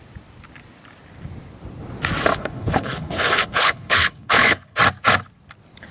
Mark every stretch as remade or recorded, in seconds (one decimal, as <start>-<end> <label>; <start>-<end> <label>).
0.0-2.4 recorded; 2.4-4.8 remade; 4.8-5.9 recorded